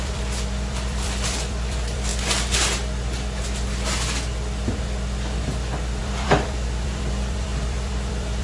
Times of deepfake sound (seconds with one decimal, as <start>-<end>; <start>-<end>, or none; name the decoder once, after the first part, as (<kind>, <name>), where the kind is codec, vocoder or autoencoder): 0.0-2.1 (vocoder, BigVGAN v2); 6.0-8.4